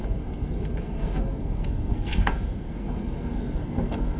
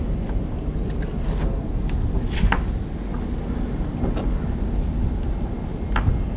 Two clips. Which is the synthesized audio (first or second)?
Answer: first